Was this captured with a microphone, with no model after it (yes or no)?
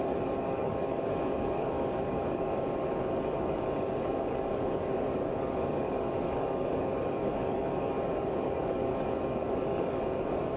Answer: no